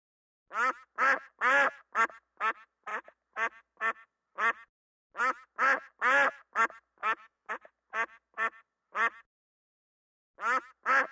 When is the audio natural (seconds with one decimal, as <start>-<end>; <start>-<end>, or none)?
0.0-7.0; 7.5-11.1